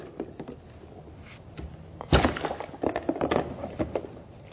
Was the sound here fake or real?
real